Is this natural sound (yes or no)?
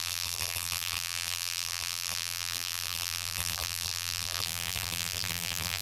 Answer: no